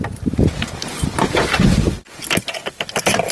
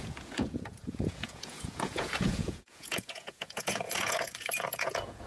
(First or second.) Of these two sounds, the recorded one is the first